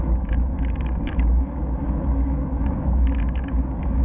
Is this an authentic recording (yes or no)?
no